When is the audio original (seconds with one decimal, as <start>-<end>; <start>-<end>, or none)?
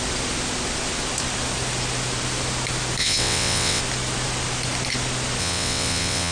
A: 0.0-3.0; 3.8-5.4